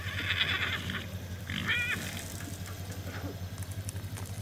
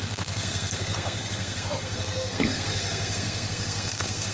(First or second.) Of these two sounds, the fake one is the second